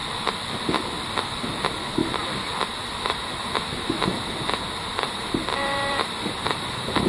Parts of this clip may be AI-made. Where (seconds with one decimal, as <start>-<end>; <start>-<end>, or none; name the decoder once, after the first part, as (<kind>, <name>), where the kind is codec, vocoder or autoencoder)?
5.5-7.1 (vocoder, BigVGAN v2)